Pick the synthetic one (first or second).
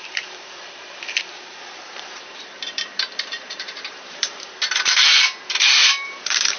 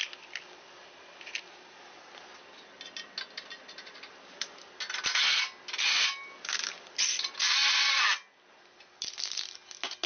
first